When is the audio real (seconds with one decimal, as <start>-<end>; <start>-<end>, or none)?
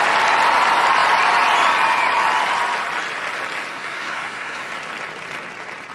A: 0.0-3.7; 4.7-5.9